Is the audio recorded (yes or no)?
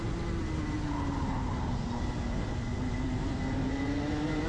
yes